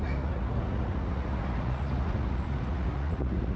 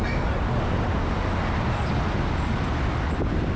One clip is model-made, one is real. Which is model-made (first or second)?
first